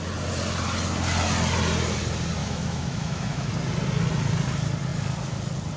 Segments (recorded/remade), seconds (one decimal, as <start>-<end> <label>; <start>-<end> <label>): 0.0-2.4 recorded; 2.4-3.5 remade; 3.5-5.8 recorded